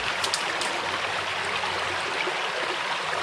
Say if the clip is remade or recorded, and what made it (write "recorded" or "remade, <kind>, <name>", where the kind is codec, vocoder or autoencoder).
recorded